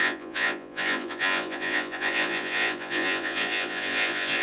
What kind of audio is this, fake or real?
fake